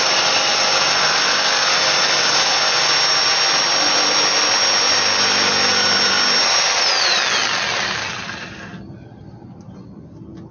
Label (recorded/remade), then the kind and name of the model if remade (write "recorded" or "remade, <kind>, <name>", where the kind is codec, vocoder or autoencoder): recorded